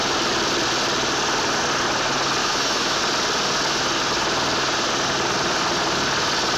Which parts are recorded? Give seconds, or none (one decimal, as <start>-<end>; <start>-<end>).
0.0-2.4; 3.0-6.6